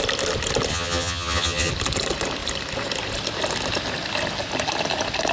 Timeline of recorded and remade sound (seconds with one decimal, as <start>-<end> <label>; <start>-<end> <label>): 0.0-0.7 recorded; 0.7-1.7 remade; 1.7-5.3 recorded